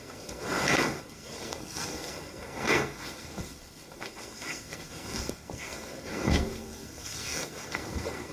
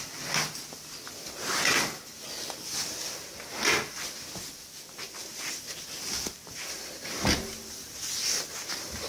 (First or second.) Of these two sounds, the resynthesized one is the first